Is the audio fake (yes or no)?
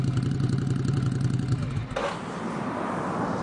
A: no